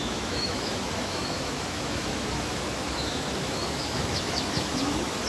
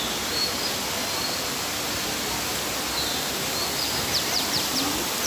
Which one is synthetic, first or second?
first